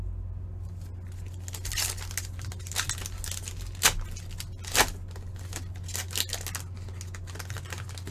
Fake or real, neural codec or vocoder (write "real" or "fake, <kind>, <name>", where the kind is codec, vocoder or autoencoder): real